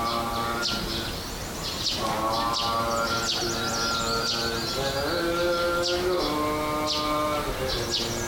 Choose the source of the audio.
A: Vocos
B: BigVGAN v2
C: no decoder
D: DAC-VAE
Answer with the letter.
C